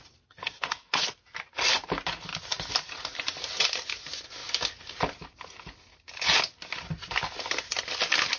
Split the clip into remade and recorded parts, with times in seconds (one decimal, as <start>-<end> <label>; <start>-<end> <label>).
0.0-0.4 recorded; 0.4-1.0 remade; 1.0-8.4 recorded